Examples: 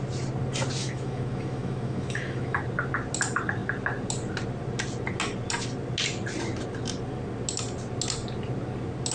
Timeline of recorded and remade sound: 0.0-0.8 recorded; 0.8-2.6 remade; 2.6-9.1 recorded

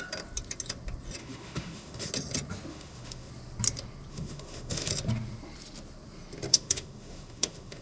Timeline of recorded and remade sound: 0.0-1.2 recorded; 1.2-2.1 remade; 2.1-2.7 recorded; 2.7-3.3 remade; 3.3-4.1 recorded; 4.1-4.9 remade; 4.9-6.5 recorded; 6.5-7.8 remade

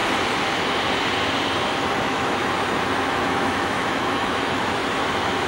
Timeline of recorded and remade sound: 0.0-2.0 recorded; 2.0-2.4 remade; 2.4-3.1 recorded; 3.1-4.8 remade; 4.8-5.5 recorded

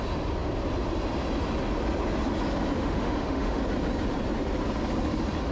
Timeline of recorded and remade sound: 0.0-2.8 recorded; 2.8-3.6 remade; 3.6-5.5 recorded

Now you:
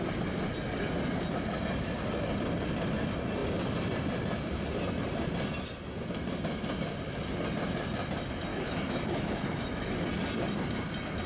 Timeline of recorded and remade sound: 0.0-8.5 recorded; 8.5-10.0 remade; 10.0-11.3 recorded